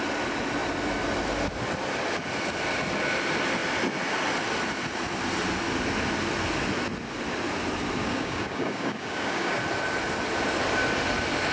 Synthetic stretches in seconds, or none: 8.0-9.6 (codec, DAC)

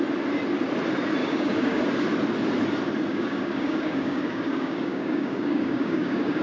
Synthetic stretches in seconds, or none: 1.2-1.8 (codec, DAC); 3.1-6.4

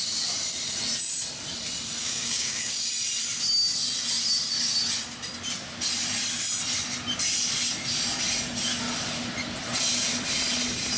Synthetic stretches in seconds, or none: 2.0-2.9 (codec, DAC)

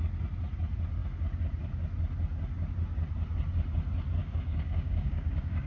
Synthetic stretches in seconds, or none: 4.2-5.7 (codec, DAC)

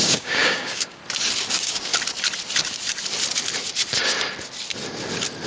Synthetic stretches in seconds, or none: 0.0-1.0 (codec, DAC); 1.5-1.9

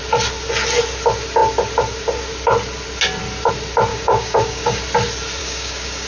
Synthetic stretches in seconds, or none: 3.9-4.8 (codec, DAC); 5.4-6.1

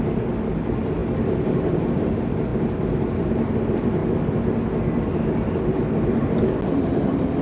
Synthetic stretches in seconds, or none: none

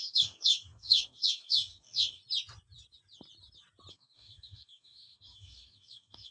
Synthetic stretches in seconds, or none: 0.0-2.2 (codec, DAC); 3.9-6.3